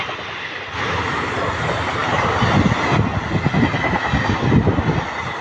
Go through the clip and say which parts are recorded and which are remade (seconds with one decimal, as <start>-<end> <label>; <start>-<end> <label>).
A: 0.0-5.4 recorded